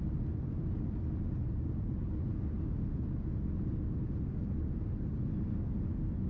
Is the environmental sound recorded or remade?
recorded